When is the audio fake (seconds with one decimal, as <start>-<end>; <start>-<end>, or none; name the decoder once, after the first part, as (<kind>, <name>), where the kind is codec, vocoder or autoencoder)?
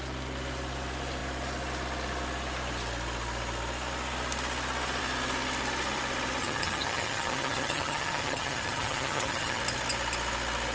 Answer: 6.4-9.6 (vocoder, HiFi-GAN)